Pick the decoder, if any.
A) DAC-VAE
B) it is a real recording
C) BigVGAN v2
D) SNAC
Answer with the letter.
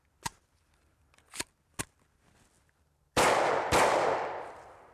B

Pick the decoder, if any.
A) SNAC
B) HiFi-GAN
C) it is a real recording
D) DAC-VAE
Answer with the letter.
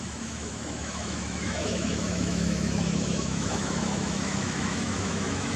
D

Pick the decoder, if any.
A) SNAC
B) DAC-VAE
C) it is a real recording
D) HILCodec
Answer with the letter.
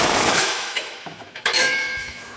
B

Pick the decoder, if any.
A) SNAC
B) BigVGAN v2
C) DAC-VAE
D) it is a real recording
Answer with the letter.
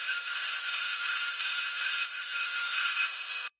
C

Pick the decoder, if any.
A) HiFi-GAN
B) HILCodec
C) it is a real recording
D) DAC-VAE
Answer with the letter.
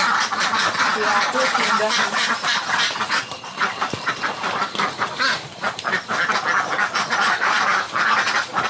C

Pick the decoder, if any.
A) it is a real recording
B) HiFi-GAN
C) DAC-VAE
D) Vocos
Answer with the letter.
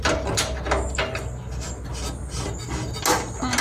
A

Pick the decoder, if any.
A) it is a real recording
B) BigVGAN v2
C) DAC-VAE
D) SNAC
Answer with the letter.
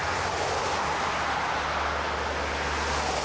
A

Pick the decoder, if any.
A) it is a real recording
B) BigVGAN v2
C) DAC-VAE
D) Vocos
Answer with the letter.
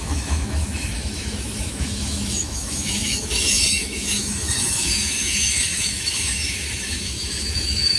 C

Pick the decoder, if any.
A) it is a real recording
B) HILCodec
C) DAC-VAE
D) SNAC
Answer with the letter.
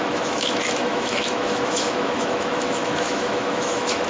C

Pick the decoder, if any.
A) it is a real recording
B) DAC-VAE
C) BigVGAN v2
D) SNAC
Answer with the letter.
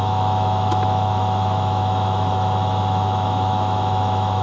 B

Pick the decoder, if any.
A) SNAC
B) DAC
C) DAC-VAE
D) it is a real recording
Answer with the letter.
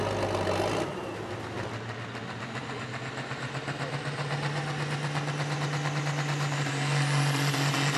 D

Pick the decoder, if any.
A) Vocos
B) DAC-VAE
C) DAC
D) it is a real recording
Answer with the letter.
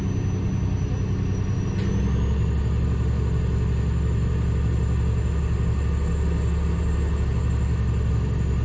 D